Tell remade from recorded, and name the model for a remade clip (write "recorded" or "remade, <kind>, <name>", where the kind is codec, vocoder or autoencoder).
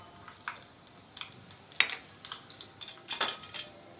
recorded